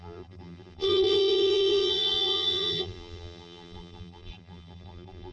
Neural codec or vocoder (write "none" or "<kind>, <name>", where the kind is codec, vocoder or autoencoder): vocoder, BigVGAN v2